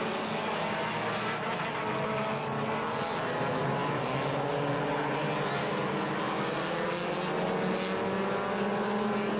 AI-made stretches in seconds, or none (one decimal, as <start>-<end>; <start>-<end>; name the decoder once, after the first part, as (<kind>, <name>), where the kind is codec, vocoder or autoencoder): none